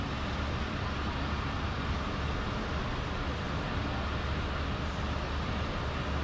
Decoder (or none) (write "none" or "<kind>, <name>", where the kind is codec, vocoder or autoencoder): none